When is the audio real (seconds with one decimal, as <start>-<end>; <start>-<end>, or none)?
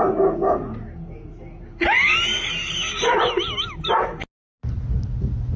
0.0-5.6